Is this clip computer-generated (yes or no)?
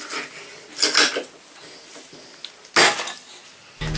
no